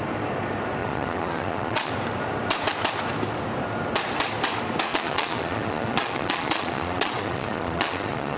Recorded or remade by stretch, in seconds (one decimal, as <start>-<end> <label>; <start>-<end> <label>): 0.0-0.8 recorded; 0.8-1.9 remade; 1.9-4.9 recorded; 4.9-8.4 remade